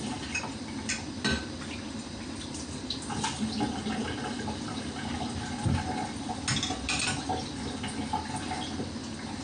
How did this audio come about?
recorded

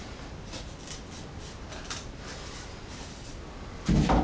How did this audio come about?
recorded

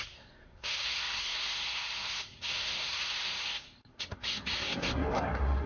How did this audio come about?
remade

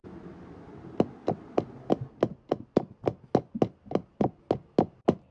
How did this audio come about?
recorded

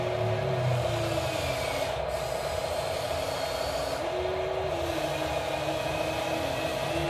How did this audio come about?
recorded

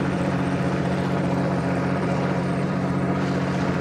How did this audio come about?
remade